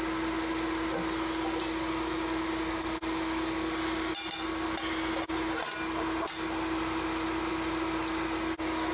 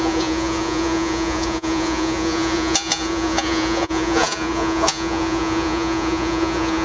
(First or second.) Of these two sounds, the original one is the first